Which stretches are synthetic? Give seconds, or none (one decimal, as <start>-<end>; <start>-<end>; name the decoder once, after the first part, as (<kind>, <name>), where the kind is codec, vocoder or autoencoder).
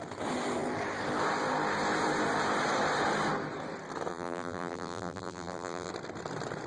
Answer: 4.1-5.9 (vocoder, BigVGAN v2)